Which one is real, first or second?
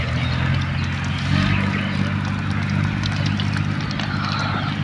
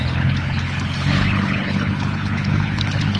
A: first